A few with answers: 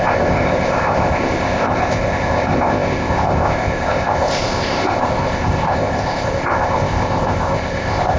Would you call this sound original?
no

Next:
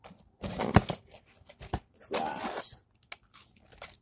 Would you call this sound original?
yes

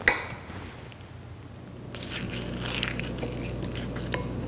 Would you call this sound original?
yes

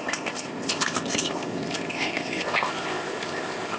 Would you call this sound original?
no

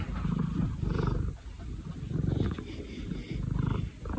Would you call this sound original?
yes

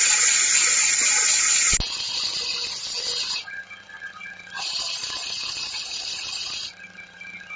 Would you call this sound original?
yes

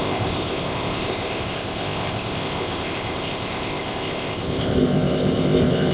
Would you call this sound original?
no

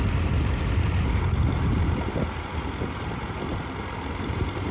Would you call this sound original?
yes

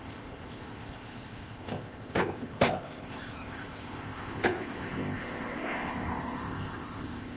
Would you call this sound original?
no